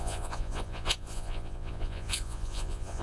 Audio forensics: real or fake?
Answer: fake